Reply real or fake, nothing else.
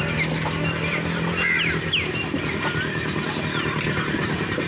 real